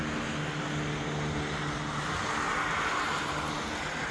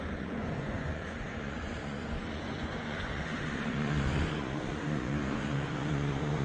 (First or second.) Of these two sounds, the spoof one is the second